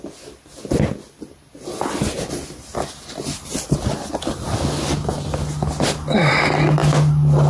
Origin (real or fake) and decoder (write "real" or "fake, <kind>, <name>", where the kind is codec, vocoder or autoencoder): real